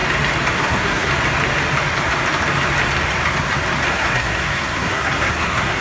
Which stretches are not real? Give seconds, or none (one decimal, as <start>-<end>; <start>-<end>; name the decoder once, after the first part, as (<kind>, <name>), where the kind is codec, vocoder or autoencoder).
0.5-1.1 (codec, SNAC); 3.9-5.8